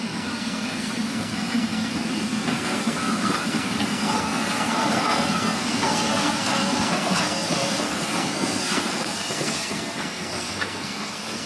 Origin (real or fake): fake